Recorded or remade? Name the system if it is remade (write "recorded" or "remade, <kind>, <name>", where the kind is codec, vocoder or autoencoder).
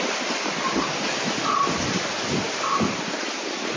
recorded